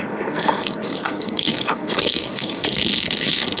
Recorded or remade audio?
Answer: remade